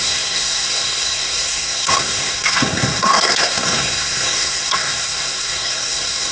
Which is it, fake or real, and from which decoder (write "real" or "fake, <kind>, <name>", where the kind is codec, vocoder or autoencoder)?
fake, codec, SNAC